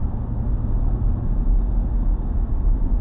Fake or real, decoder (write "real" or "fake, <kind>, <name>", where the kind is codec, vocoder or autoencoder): real